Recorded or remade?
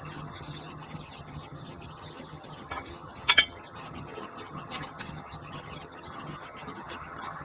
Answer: remade